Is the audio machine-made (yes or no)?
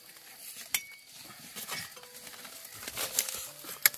no